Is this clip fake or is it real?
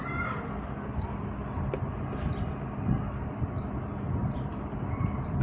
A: real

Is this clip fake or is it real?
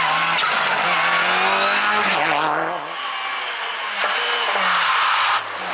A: real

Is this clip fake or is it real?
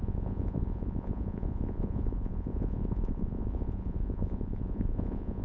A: fake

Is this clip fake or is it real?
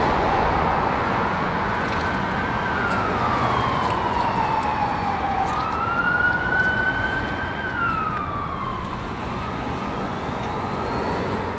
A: fake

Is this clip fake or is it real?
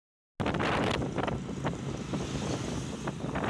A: real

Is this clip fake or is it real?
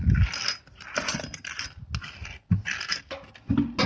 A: real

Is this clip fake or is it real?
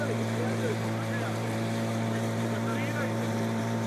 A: fake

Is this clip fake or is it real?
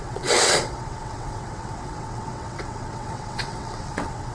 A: fake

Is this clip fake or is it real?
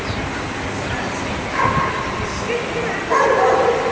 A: real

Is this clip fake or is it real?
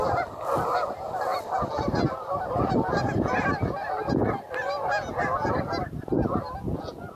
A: real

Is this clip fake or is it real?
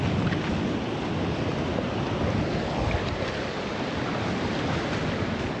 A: real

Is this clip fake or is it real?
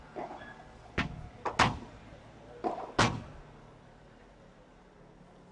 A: real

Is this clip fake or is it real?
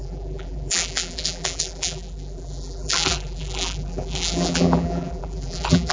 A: fake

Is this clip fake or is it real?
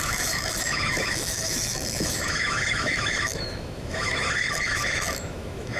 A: fake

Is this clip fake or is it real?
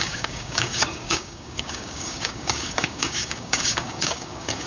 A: fake